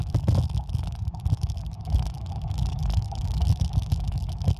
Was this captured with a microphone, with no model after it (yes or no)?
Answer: no